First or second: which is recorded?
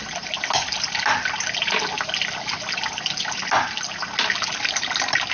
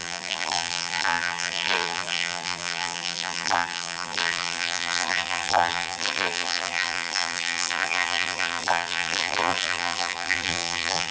first